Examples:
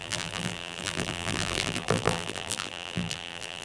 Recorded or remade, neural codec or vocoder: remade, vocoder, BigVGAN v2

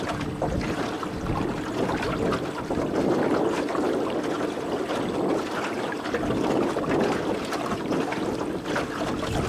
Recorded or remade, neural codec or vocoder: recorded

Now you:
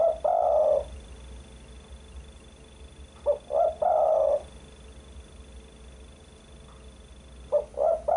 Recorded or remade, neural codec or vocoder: recorded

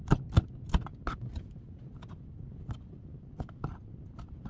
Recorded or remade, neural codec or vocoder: recorded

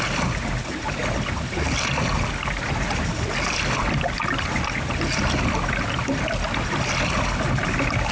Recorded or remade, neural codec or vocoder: recorded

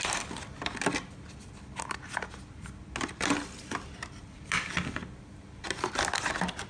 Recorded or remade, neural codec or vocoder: recorded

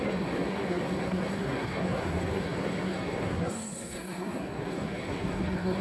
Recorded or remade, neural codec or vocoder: remade, codec, SNAC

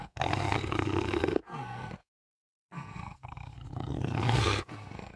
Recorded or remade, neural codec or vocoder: remade, codec, SNAC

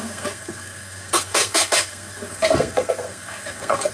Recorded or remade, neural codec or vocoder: remade, codec, SNAC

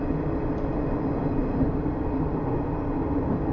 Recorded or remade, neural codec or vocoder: recorded